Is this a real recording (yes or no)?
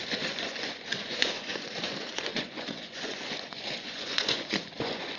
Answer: no